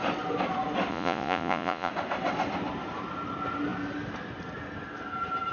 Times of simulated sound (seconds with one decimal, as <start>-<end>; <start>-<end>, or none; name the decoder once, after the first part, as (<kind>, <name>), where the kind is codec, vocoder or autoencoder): 0.9-1.9 (vocoder, Vocos)